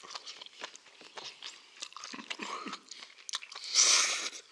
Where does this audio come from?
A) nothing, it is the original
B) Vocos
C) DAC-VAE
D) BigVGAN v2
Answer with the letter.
A